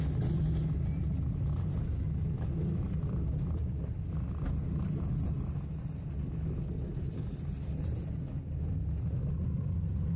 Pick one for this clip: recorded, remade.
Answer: recorded